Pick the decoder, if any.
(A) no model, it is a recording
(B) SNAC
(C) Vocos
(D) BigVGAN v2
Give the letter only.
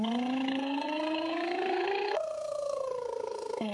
B